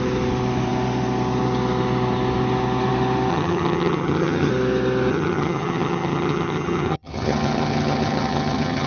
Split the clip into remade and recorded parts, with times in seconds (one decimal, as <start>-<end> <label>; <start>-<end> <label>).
0.0-3.3 recorded; 3.3-4.5 remade; 4.5-5.1 recorded; 5.1-8.9 remade